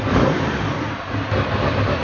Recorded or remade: remade